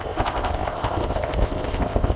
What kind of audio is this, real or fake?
fake